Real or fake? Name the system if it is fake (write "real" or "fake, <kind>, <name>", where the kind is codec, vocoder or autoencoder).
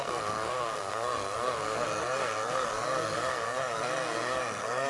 fake, codec, SNAC